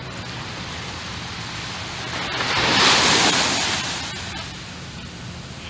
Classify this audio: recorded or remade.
recorded